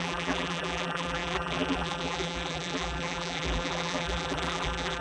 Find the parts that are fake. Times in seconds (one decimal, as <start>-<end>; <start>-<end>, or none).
0.0-5.0